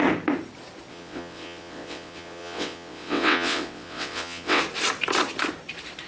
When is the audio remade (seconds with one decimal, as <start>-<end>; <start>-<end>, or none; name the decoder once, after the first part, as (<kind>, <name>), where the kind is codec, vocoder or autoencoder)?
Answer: 0.9-4.6 (vocoder, WaveNeXt)